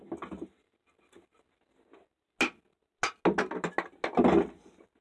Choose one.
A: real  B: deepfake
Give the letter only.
A